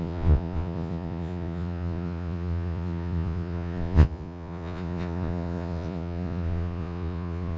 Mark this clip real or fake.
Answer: fake